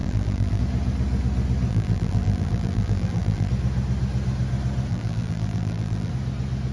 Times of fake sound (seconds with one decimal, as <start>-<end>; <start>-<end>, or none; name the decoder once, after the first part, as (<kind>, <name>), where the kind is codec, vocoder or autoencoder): 0.0-0.6 (vocoder, BigVGAN v2); 1.7-3.5; 4.9-6.1